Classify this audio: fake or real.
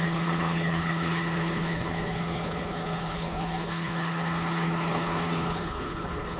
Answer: fake